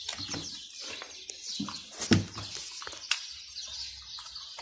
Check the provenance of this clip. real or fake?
real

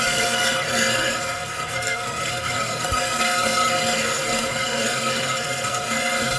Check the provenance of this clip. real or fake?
fake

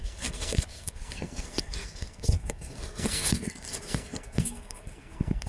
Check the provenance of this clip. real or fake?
fake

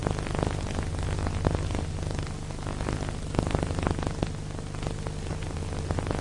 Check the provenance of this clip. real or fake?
real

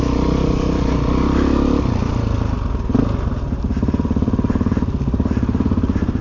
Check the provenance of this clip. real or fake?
real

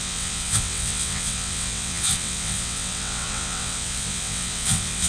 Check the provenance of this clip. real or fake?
fake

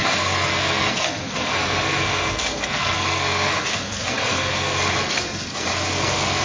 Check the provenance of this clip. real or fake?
fake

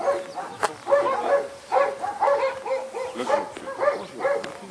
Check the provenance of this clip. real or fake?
real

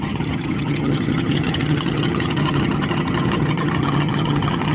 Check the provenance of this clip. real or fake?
fake